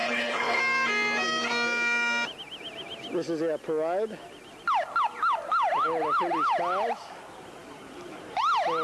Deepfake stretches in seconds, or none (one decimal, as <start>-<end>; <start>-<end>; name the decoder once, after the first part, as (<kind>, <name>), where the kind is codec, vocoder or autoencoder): 0.0-0.6 (codec, HILCodec)